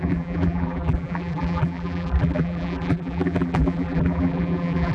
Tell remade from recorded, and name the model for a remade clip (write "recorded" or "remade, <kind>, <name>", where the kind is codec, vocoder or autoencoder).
remade, vocoder, BigVGAN v2